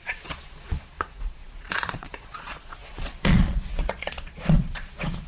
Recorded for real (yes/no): no